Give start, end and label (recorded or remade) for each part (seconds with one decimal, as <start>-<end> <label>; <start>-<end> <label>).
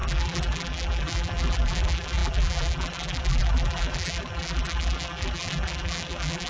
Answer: 0.0-6.5 remade